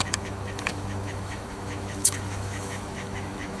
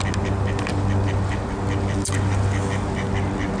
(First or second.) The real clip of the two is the second